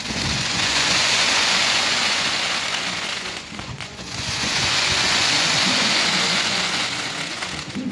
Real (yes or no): no